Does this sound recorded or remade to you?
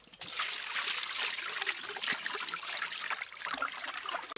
recorded